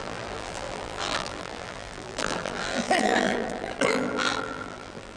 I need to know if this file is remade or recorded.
remade